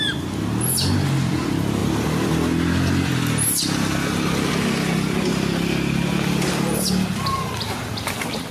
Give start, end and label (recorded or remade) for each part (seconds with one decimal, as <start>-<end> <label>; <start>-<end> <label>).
0.0-8.5 recorded